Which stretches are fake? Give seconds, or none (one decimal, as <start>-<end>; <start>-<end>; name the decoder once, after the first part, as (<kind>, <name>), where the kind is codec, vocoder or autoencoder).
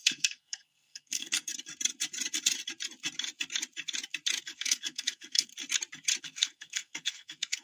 0.0-1.5 (codec, SNAC); 4.4-5.5; 6.2-7.6